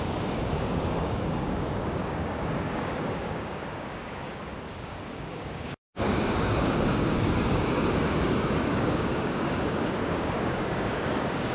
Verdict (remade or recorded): remade